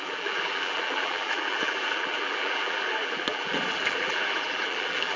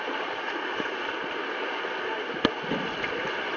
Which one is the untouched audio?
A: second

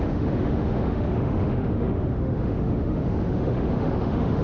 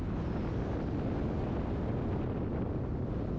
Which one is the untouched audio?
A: second